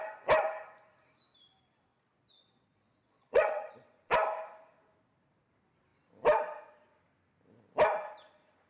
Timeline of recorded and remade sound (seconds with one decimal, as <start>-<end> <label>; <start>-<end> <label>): 0.0-1.9 recorded; 1.9-3.7 remade; 3.7-8.7 recorded